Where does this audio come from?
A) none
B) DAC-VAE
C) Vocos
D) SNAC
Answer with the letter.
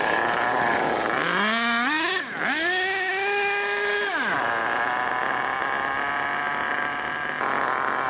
A